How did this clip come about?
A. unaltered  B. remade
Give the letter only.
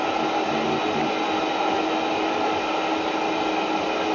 A